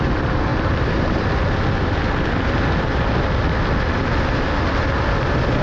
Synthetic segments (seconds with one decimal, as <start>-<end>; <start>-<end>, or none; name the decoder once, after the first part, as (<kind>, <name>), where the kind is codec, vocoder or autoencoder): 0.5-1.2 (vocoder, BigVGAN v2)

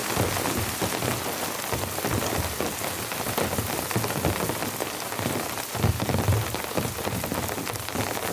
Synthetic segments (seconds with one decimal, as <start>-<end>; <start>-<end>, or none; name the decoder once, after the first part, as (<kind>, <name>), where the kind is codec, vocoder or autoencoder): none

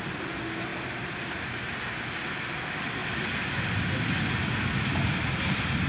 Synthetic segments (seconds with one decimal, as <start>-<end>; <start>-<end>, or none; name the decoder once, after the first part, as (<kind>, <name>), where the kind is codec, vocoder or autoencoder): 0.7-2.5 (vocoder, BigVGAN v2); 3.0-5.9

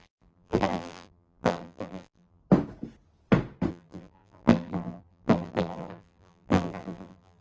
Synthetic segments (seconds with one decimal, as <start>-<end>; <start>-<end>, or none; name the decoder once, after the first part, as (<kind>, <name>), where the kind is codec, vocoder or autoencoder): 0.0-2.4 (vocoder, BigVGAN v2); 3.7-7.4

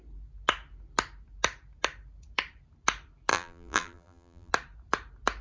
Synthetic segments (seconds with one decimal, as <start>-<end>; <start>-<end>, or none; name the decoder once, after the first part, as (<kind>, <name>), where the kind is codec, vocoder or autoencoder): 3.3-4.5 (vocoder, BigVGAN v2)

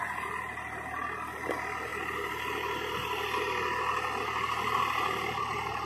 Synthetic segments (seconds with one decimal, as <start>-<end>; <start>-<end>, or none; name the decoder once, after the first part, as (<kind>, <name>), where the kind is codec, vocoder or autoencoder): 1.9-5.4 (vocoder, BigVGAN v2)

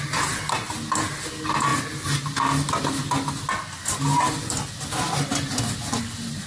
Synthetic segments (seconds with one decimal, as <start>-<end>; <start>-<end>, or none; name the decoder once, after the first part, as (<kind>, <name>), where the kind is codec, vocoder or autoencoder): none